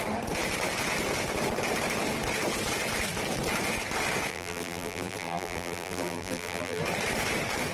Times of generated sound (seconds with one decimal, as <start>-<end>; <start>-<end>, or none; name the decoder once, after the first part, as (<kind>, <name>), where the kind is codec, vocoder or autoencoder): 4.3-6.8 (vocoder, BigVGAN v2)